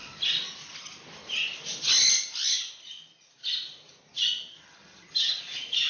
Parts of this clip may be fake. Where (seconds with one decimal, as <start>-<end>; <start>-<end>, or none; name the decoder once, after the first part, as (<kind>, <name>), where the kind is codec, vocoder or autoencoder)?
4.5-5.4 (vocoder, HiFi-GAN)